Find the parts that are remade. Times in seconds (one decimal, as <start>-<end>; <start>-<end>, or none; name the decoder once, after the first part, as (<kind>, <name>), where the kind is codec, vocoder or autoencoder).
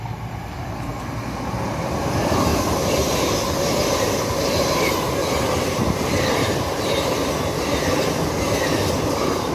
none